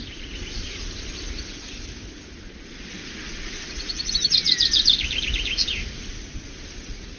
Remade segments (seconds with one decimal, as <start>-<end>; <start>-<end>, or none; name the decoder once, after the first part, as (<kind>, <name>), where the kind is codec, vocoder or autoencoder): 3.0-4.1 (vocoder, Vocos)